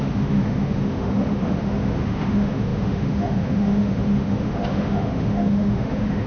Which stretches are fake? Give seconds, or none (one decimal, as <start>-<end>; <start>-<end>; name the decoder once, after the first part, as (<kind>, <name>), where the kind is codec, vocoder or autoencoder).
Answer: 0.0-6.3 (autoencoder, DAC-VAE)